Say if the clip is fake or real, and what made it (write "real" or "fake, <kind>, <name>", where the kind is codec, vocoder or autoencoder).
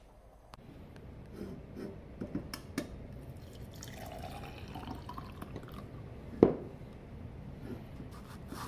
real